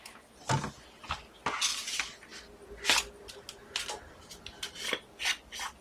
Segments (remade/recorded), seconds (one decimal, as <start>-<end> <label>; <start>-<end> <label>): 0.0-5.8 recorded